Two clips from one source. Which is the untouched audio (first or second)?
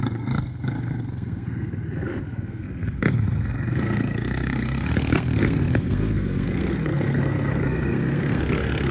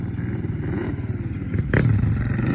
second